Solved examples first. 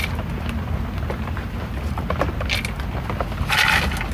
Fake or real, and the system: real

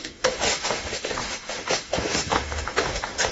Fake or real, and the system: fake, autoencoder, DAC-VAE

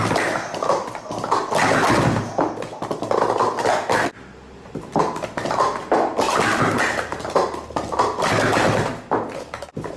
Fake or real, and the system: real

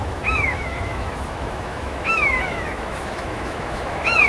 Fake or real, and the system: fake, autoencoder, DAC-VAE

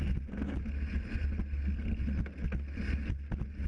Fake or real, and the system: real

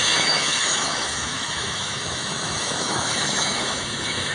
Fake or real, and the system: fake, autoencoder, DAC-VAE